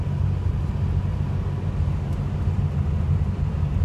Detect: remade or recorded recorded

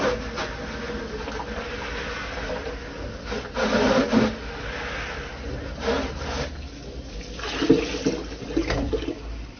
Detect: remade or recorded recorded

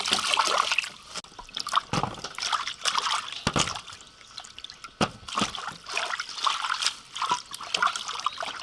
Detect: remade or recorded recorded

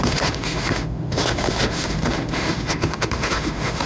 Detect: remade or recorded remade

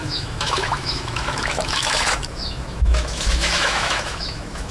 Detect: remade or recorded remade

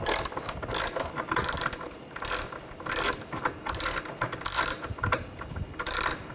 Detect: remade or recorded recorded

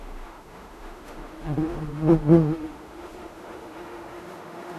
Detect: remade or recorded remade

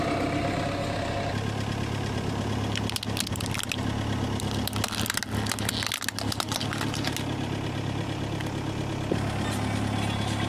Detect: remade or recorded recorded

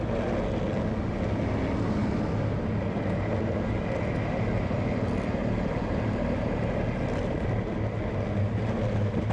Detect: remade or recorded recorded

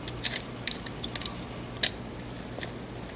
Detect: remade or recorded recorded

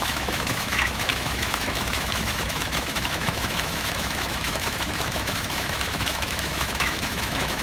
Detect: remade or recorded remade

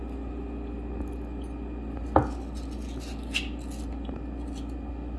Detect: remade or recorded recorded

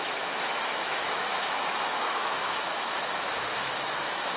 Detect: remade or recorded remade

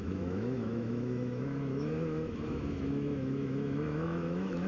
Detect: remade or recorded remade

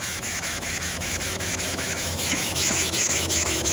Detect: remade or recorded remade